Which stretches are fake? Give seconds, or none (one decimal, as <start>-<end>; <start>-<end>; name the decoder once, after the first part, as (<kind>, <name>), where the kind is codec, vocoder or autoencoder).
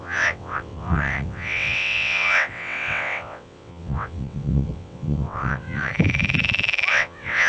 0.0-5.9 (vocoder, WaveNeXt); 6.9-7.5